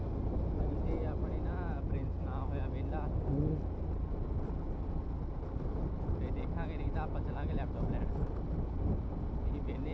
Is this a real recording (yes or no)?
yes